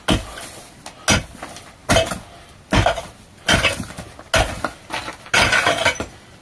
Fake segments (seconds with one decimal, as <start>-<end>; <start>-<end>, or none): none